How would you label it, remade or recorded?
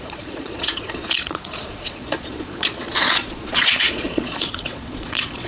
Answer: remade